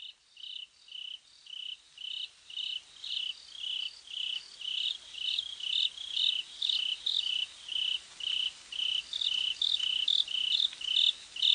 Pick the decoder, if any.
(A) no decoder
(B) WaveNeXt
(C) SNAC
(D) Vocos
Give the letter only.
A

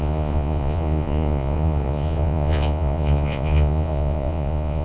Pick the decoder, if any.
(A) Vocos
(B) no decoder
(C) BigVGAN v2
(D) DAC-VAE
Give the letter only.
A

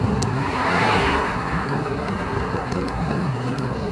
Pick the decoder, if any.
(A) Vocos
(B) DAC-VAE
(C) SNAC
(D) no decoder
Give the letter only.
C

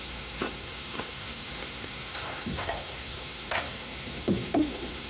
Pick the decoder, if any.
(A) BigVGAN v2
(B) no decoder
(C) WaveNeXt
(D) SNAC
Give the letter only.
D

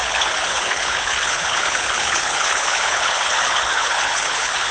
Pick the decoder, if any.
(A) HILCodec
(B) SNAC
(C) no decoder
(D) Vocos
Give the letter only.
A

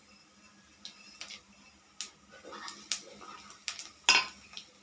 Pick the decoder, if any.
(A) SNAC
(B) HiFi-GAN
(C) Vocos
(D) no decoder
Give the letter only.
D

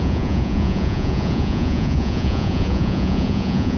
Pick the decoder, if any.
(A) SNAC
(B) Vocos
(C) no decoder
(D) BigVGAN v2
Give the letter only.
B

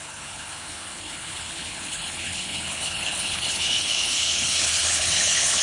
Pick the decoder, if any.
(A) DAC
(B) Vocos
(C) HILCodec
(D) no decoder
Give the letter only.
C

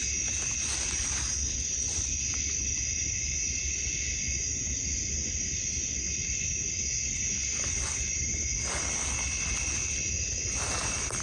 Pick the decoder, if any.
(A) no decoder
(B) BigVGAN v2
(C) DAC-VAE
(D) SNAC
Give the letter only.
A